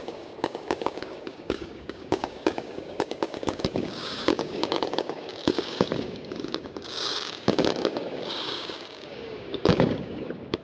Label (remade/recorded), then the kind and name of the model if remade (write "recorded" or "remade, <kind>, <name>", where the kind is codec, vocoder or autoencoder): remade, codec, DAC